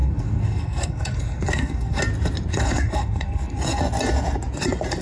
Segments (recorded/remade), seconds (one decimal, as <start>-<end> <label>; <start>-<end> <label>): 0.0-2.0 remade; 2.0-2.5 recorded; 2.5-3.8 remade; 3.8-5.0 recorded